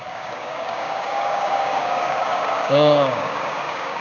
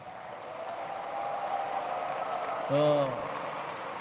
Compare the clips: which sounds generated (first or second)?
first